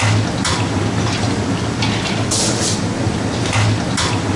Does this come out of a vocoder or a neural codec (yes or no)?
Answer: no